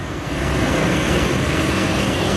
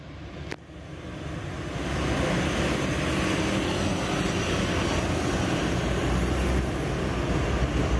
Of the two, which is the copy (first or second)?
first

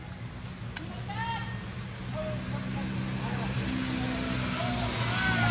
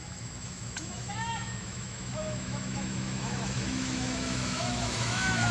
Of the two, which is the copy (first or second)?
second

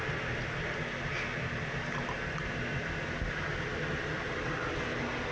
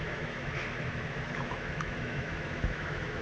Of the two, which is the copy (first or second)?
second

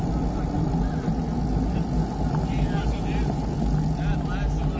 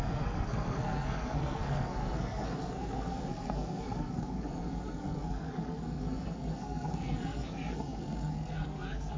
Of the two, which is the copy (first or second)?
second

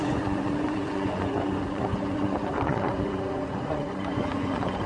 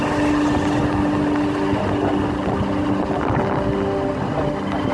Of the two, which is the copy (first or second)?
first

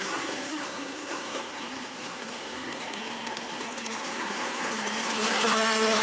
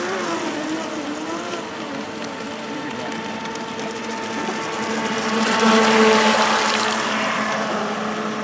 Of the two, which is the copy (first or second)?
first